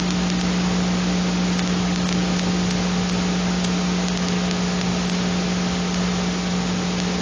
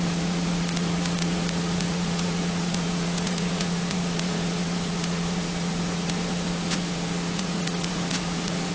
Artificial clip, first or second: second